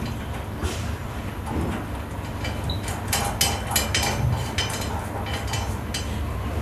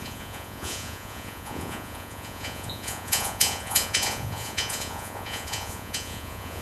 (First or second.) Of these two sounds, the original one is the first